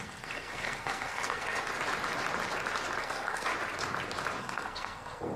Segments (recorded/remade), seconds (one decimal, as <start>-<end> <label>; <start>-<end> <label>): 0.0-1.7 remade; 1.7-3.0 recorded; 3.0-3.5 remade; 3.5-4.4 recorded; 4.4-5.4 remade